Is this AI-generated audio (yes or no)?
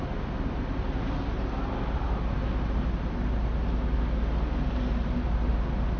no